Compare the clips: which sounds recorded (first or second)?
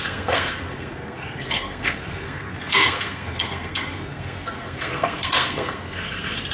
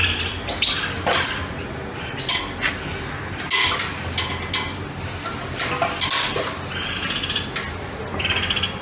second